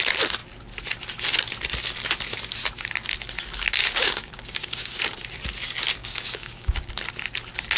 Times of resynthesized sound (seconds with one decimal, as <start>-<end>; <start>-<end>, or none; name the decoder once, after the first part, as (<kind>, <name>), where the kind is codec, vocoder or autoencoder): 3.8-5.0 (codec, DAC); 6.0-6.9